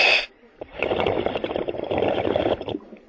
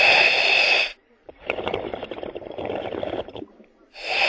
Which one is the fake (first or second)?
first